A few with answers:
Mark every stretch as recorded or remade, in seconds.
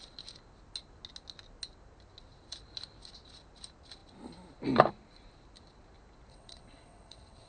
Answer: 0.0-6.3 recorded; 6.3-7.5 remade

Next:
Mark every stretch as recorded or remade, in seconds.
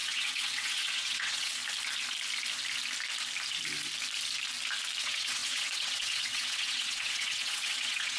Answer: 0.0-1.6 remade; 1.6-5.0 recorded; 5.0-8.2 remade